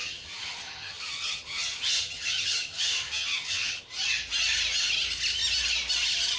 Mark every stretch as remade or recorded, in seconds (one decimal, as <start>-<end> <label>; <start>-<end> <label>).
0.0-3.8 remade; 3.8-6.4 recorded